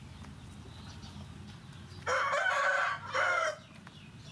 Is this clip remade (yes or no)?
no